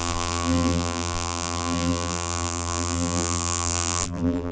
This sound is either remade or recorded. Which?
remade